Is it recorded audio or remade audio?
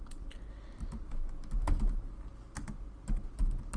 recorded